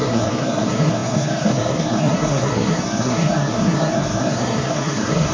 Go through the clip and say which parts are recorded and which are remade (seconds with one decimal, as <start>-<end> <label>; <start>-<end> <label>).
0.0-5.3 remade